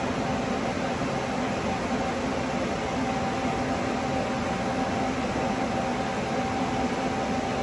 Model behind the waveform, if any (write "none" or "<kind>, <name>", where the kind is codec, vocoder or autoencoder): none